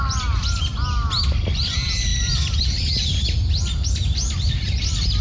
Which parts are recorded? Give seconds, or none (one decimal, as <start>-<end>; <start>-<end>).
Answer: 0.0-5.2